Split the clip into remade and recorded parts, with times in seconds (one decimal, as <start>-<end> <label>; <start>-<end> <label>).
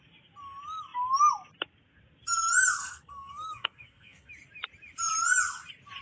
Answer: 0.0-2.8 recorded; 2.8-4.3 remade; 4.3-6.0 recorded